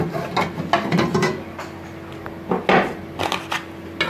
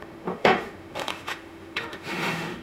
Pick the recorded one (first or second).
first